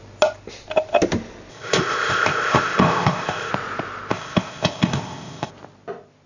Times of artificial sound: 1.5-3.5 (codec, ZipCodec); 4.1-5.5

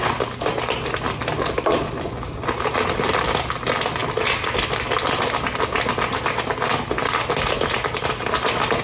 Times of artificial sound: none

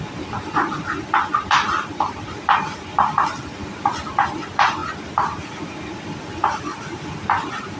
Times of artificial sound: none

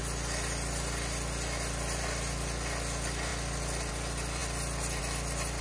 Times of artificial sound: none

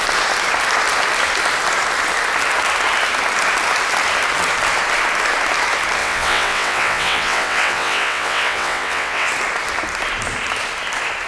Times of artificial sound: 6.0-9.3 (vocoder, WaveNeXt)

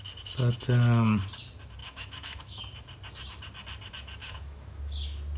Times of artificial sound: 1.8-2.6 (autoencoder, DAC-VAE); 4.2-4.8

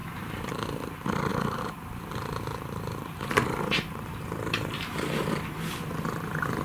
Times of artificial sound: 0.0-0.5 (vocoder, BigVGAN v2); 1.3-5.3

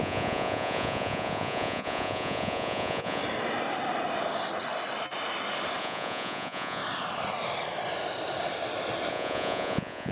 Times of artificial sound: 0.0-3.2 (vocoder, Vocos); 5.8-6.8; 9.1-10.1